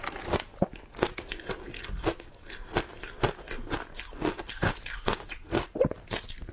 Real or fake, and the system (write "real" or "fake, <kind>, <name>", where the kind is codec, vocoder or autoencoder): real